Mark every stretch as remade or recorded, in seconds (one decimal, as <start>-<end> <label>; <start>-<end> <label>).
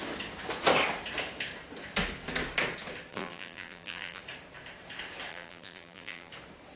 0.0-3.1 recorded; 3.1-4.2 remade; 4.2-5.3 recorded; 5.3-6.3 remade; 6.3-6.8 recorded